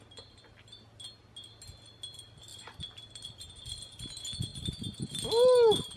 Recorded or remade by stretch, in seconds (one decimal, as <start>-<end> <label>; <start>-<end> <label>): 0.0-2.5 recorded; 2.5-3.3 remade; 3.3-4.5 recorded; 4.5-5.1 remade; 5.1-6.0 recorded